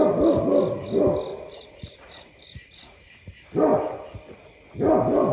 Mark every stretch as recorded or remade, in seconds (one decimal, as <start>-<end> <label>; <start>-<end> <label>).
0.0-1.3 recorded; 1.3-3.1 remade; 3.1-5.3 recorded

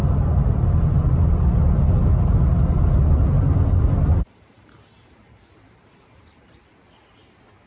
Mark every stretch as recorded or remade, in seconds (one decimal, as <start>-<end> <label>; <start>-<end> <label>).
0.0-4.1 recorded; 4.1-6.9 remade; 6.9-7.7 recorded

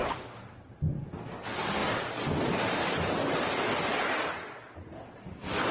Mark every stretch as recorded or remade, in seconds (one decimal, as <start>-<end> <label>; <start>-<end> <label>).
0.0-0.8 remade; 0.8-1.8 recorded; 1.8-5.2 remade; 5.2-5.7 recorded

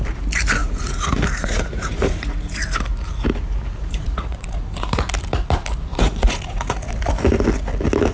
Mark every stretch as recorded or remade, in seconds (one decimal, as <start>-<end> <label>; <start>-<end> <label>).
0.0-0.6 recorded; 0.6-2.6 remade; 2.6-3.8 recorded; 3.8-5.1 remade; 5.1-5.9 recorded; 5.9-6.9 remade; 6.9-8.1 recorded

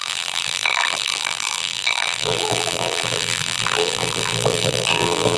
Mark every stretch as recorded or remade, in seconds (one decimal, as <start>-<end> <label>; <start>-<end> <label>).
0.0-5.4 remade

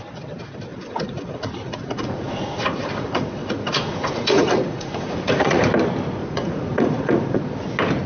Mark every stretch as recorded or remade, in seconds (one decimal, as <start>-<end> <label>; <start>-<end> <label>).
0.0-0.7 recorded; 0.7-5.6 remade; 5.6-6.2 recorded; 6.2-7.4 remade; 7.4-8.1 recorded

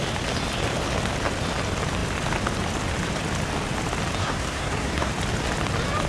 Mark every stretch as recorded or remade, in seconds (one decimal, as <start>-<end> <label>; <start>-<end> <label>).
0.0-4.2 recorded; 4.2-5.1 remade; 5.1-6.1 recorded